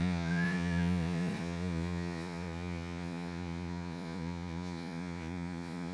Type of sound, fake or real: fake